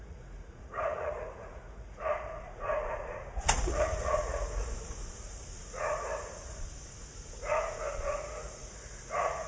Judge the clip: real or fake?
fake